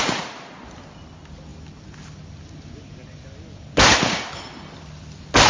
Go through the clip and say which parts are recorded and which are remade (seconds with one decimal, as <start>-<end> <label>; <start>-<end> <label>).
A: 0.0-5.5 recorded